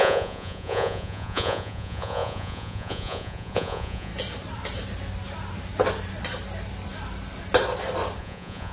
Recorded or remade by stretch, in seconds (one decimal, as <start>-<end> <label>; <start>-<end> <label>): 0.0-4.1 remade; 4.1-8.2 recorded; 8.2-8.7 remade